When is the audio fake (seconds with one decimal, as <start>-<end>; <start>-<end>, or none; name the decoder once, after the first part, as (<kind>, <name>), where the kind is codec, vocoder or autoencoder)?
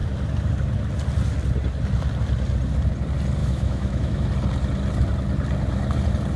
3.4-4.3 (autoencoder, DAC-VAE)